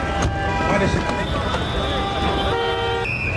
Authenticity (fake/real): real